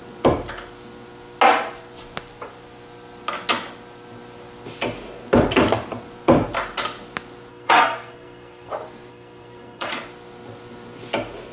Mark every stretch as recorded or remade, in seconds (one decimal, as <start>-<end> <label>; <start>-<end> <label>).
0.0-7.5 recorded; 7.5-8.7 remade; 8.7-9.1 recorded; 9.1-9.9 remade; 9.9-11.5 recorded